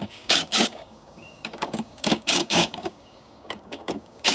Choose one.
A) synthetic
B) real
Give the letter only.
A